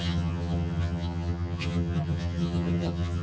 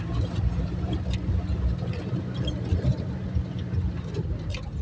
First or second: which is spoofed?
first